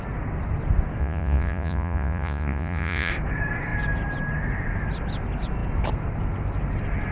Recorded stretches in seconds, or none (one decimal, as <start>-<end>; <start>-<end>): 0.0-1.0; 3.1-7.1